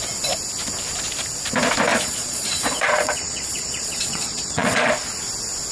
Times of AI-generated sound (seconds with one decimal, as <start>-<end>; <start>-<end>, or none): 1.9-4.9